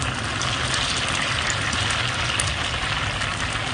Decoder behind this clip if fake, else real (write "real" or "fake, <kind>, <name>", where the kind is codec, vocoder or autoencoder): real